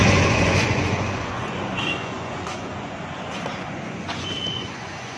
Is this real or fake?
fake